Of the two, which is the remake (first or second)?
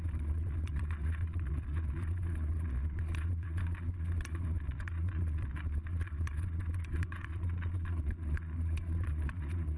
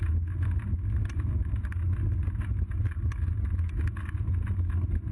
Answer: first